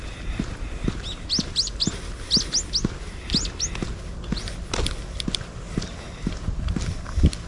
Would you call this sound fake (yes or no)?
no